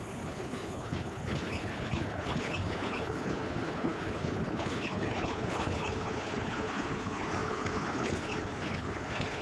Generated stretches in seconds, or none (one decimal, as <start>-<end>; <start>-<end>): 0.0-9.4